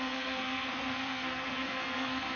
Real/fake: fake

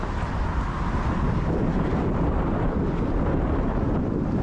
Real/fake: real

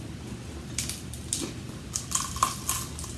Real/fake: real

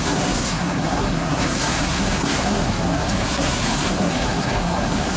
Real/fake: fake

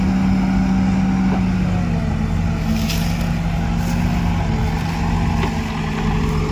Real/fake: real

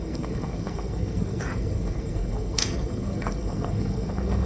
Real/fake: fake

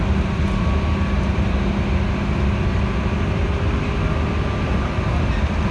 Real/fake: real